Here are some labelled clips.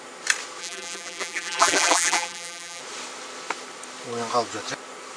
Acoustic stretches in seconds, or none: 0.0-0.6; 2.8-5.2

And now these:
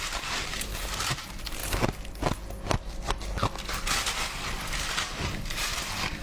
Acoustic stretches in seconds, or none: 1.6-5.0

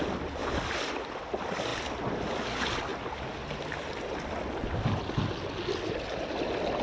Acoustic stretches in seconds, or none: 0.0-0.4; 0.9-1.7; 2.2-6.8

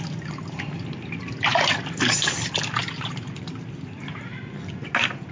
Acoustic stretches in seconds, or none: 0.0-5.3

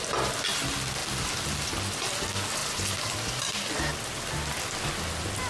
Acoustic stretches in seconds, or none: 0.0-2.6; 3.1-3.9; 4.8-5.5

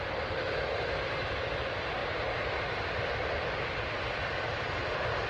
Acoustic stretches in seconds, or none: 2.0-2.6